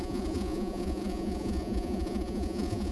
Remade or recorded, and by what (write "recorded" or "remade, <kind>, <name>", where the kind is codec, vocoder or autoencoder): remade, vocoder, Vocos